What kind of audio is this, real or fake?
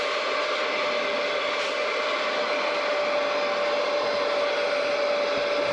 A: real